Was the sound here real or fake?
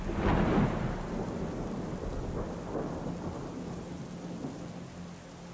real